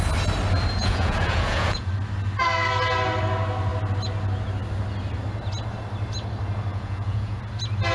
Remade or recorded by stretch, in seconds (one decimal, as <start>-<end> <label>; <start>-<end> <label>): 0.0-0.8 recorded; 0.8-1.9 remade; 1.9-6.7 recorded; 6.7-7.4 remade; 7.4-7.9 recorded